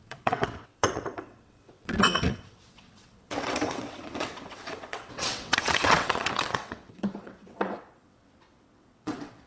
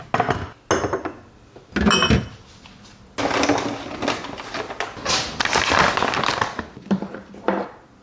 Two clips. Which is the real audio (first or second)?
second